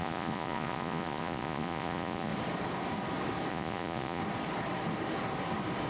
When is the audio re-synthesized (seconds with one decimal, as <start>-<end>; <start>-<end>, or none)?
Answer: 0.0-2.3; 3.5-4.2